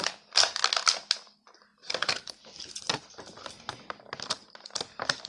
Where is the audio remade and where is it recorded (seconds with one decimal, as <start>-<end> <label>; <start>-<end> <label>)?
0.0-5.3 recorded